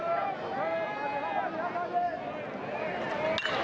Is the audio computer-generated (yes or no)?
no